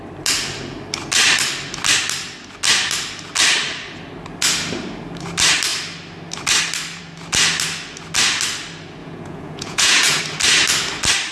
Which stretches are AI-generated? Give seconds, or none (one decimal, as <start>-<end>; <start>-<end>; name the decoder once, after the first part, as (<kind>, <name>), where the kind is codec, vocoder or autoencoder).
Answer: 9.0-10.2 (vocoder, Vocos)